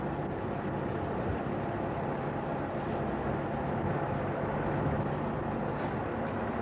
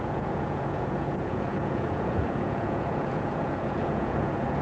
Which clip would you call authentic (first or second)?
first